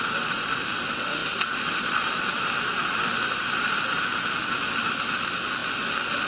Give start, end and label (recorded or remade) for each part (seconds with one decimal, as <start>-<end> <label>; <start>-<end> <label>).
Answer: 0.0-1.2 recorded; 1.2-4.0 remade; 4.0-5.6 recorded; 5.6-6.3 remade